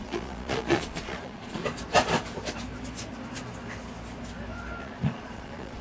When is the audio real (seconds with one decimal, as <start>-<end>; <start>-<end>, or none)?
1.6-4.8